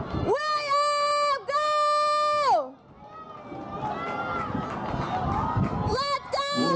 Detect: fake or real real